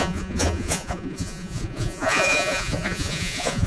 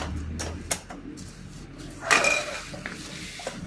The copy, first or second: first